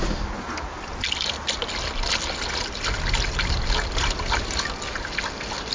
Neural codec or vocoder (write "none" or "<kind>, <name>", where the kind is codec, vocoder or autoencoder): none